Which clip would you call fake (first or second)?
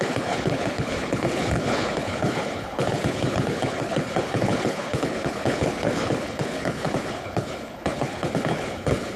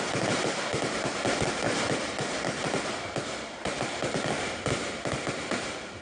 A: first